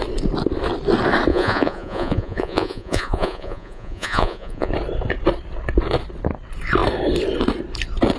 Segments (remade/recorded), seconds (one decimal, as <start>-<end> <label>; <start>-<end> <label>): 0.0-1.3 recorded; 1.3-4.7 remade; 4.7-8.2 recorded